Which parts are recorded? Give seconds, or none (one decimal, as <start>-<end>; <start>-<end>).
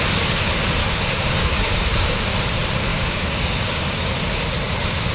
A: 0.0-0.8; 2.2-2.9; 4.1-5.1